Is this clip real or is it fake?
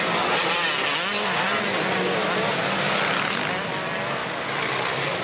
real